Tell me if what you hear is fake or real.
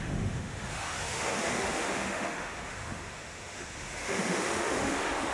fake